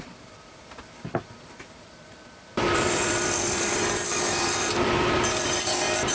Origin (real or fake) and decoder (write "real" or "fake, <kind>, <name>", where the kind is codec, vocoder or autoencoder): fake, vocoder, BigVGAN v2